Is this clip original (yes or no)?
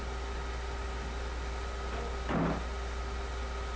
yes